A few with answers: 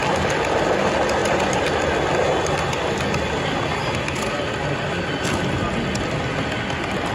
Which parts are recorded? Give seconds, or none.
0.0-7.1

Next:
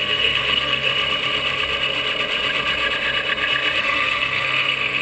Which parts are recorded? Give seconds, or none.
0.9-3.8